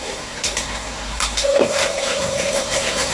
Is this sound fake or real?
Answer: fake